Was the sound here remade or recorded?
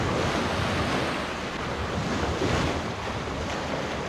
recorded